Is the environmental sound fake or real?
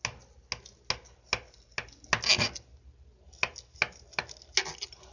real